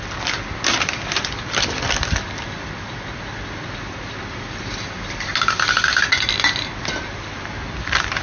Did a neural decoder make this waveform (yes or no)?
yes